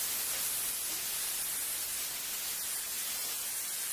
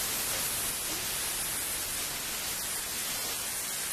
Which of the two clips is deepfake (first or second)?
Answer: first